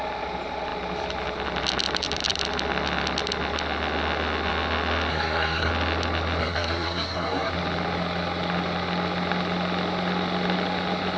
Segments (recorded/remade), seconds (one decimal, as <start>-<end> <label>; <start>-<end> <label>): 0.0-5.1 recorded; 5.1-5.7 remade; 5.7-6.4 recorded; 6.4-7.5 remade; 7.5-11.2 recorded